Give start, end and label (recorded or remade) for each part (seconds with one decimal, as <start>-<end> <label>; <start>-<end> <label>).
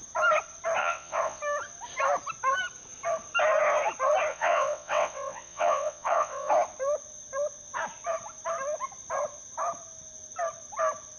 0.0-0.8 recorded; 0.8-1.4 remade; 1.4-4.3 recorded; 4.3-6.5 remade; 6.5-11.2 recorded